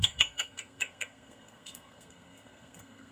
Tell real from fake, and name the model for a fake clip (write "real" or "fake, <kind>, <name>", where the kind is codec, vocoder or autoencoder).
fake, codec, SNAC